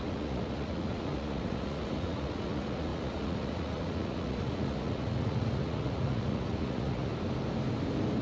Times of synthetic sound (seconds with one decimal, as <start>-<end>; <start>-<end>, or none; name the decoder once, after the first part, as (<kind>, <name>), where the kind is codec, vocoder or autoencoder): 0.0-7.1 (vocoder, Vocos)